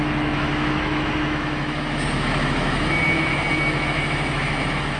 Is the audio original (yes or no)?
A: no